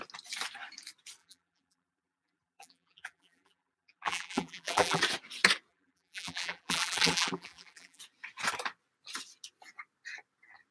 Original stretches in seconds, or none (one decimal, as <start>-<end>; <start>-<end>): 0.0-1.2; 5.0-5.7; 8.0-10.7